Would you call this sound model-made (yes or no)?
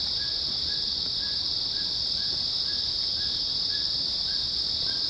no